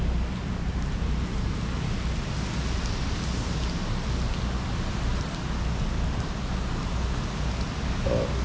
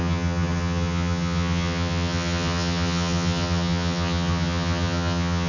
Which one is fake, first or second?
second